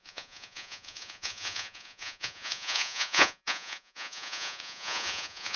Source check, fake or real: fake